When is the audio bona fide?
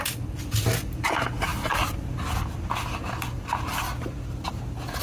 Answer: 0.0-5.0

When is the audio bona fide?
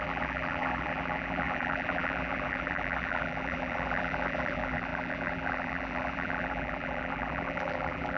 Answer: none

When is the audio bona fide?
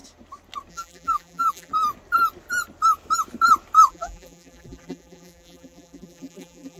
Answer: 0.0-0.7; 1.7-3.9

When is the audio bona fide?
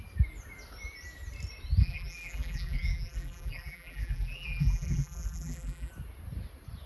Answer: 0.0-1.8; 5.9-6.9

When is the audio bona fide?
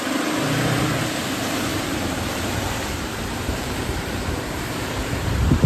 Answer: 0.0-1.7; 5.1-5.7